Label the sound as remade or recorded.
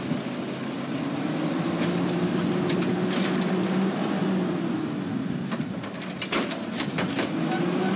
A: recorded